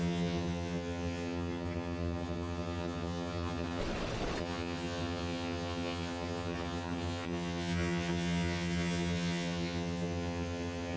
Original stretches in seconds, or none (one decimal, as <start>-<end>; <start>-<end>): 3.8-4.4